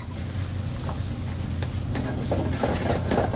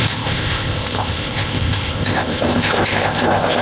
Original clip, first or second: first